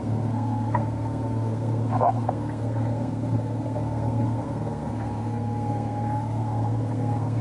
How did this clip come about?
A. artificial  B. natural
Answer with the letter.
A